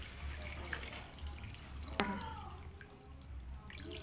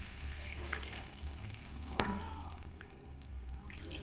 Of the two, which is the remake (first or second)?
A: second